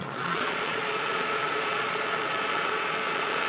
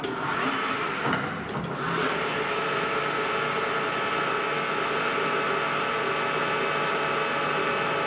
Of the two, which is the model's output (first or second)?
first